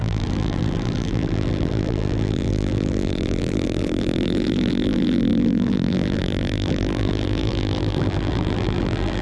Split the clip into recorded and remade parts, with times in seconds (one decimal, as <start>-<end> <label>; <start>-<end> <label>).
0.0-9.2 remade

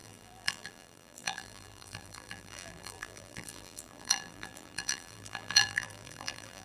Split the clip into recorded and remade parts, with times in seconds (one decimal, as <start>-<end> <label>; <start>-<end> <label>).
0.0-6.6 remade

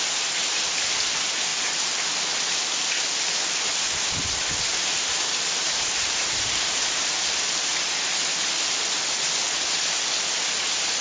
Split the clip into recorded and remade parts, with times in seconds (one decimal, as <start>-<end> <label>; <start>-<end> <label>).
0.0-4.8 recorded; 4.8-7.7 remade; 7.7-11.0 recorded

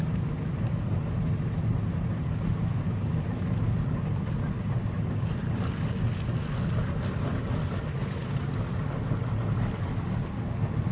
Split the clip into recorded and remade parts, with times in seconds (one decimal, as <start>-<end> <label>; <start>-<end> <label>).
0.0-1.7 recorded; 1.7-2.3 remade; 2.3-8.2 recorded; 8.2-8.8 remade; 8.8-10.9 recorded

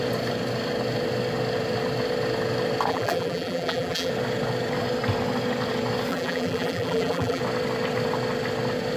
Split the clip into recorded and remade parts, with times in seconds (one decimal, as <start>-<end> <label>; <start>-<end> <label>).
0.0-2.9 recorded; 2.9-4.1 remade; 4.1-6.1 recorded; 6.1-7.4 remade; 7.4-9.0 recorded

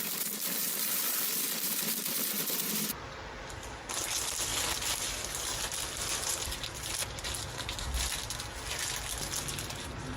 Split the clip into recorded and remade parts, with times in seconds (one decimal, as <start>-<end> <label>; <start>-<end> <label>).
0.0-0.6 recorded; 0.6-2.9 remade; 2.9-10.2 recorded

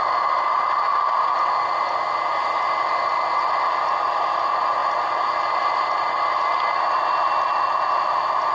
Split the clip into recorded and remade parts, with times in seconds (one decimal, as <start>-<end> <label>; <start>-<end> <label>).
0.0-8.5 recorded